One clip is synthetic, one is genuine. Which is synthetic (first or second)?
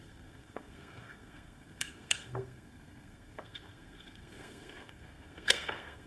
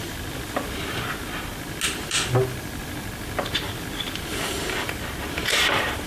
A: first